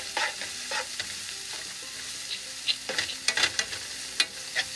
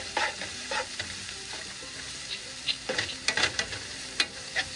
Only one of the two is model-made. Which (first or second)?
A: second